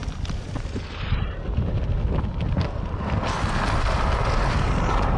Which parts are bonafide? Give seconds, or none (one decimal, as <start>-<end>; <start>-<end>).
0.0-5.2